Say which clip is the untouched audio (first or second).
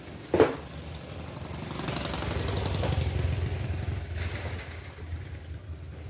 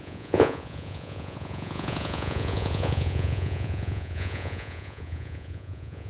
first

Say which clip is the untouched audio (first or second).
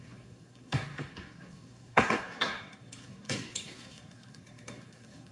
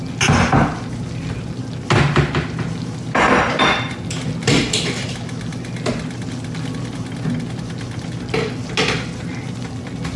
second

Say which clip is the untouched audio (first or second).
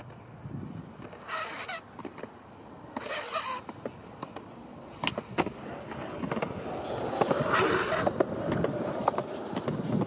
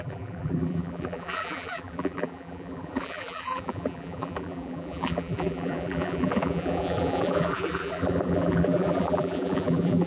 first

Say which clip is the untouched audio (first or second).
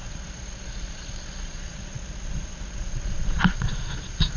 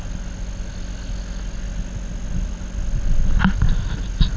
second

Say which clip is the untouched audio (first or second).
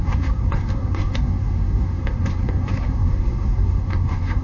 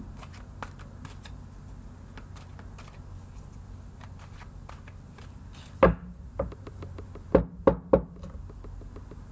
second